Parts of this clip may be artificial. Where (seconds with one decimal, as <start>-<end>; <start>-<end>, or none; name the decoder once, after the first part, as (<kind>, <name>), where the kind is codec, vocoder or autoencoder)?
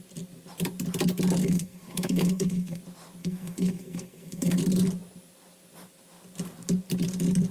1.4-2.8 (codec, SNAC); 3.2-4.6